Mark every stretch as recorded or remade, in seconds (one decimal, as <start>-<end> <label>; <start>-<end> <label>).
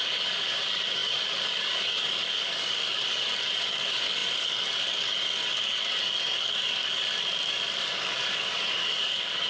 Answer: 0.0-9.5 remade